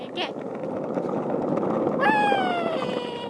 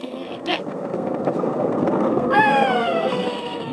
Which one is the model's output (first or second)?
second